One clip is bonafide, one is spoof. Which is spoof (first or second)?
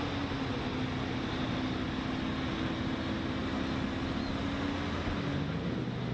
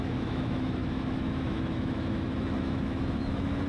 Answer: second